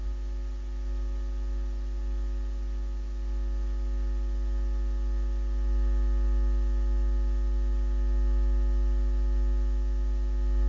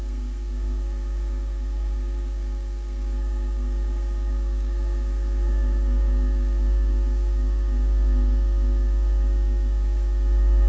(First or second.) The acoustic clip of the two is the first